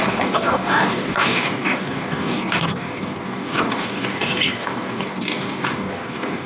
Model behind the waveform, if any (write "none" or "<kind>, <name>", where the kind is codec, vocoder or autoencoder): codec, DAC